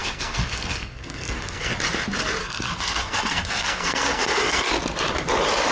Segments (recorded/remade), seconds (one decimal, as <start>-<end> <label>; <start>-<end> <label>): 0.0-1.7 remade; 1.7-2.4 recorded; 2.4-4.7 remade; 4.7-5.7 recorded